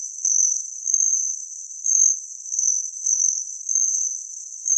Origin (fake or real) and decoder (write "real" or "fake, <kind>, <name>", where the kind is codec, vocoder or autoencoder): fake, codec, SNAC